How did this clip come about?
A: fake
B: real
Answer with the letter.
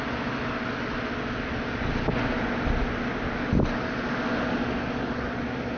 B